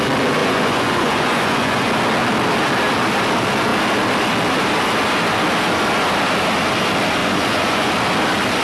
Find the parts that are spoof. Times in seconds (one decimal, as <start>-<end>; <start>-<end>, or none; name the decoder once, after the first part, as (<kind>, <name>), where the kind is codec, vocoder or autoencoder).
0.4-1.9 (vocoder, Vocos); 7.2-7.9